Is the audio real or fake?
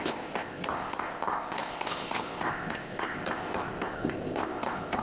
fake